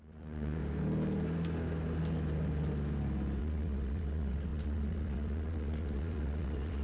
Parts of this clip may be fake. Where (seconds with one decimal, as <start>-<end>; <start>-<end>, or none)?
0.0-0.6; 3.4-6.8